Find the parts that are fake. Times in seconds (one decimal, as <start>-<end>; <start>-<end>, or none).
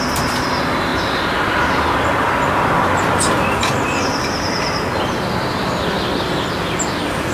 none